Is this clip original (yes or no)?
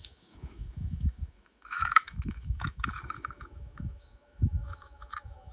no